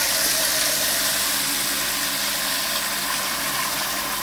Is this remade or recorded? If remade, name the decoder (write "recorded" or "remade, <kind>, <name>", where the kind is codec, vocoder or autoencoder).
recorded